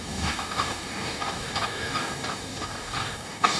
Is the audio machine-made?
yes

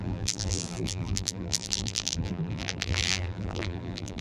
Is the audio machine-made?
yes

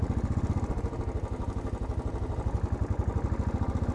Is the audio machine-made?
no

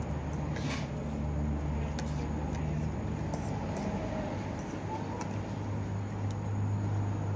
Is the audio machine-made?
no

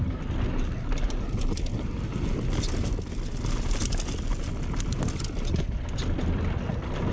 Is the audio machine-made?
no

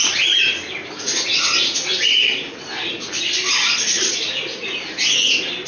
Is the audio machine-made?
no